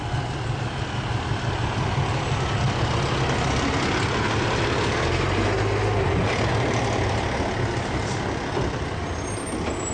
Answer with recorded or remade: recorded